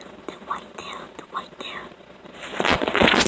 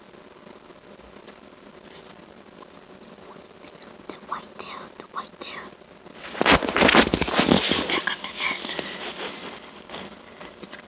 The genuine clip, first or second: second